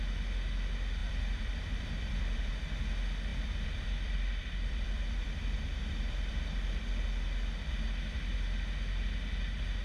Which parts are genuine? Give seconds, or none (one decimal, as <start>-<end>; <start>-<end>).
0.0-1.0; 2.5-3.3; 6.8-9.8